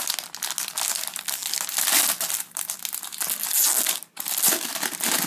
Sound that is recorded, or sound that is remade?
recorded